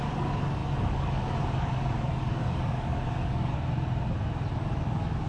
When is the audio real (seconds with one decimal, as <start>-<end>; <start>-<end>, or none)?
3.5-4.5